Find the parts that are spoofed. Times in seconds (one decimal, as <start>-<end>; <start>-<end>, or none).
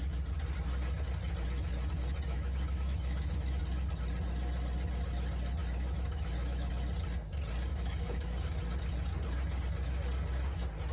2.3-3.6; 5.6-6.7; 7.7-8.6